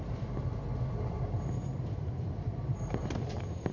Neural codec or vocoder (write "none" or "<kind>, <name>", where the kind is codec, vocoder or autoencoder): vocoder, BigVGAN v2